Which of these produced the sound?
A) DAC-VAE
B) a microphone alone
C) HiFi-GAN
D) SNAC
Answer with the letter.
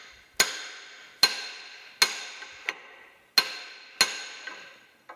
B